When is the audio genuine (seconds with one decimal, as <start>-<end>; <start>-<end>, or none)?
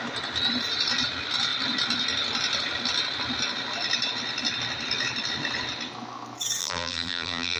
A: 0.0-6.6